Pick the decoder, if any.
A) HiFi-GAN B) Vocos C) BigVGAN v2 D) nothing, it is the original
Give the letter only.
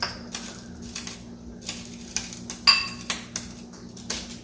D